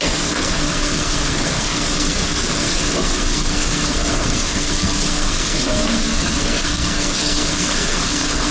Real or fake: fake